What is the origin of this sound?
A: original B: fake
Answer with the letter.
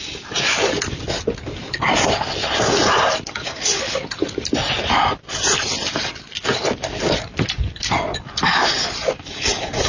A